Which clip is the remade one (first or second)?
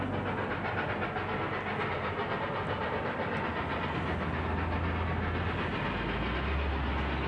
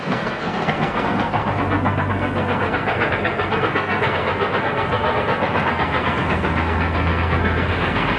second